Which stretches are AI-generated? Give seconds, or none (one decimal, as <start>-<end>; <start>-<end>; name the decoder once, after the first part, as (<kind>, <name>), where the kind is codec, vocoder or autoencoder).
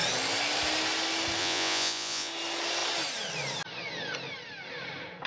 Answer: 1.4-2.3 (vocoder, Vocos)